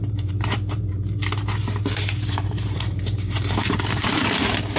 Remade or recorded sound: remade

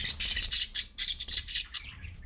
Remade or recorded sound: remade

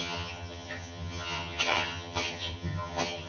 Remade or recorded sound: remade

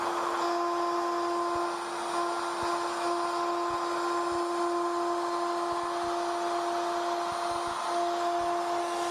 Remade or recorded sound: recorded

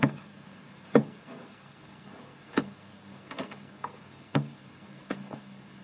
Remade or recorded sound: remade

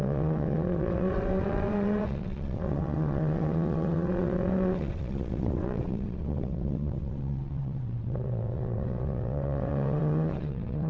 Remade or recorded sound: remade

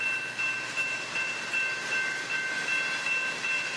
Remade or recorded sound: recorded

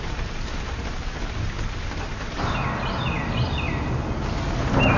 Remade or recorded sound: recorded